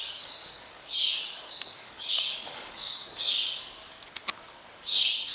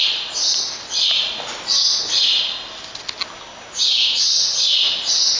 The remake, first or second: first